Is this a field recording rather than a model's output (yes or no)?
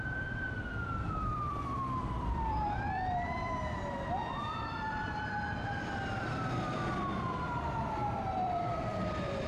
no